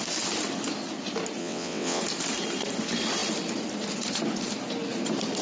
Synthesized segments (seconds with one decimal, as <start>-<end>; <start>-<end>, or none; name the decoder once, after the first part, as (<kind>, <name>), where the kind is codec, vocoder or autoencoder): 1.4-2.0 (vocoder, WaveNeXt)